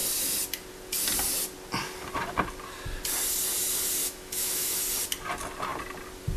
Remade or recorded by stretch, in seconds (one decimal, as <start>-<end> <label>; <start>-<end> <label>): 0.0-4.0 recorded; 4.0-4.8 remade; 4.8-6.4 recorded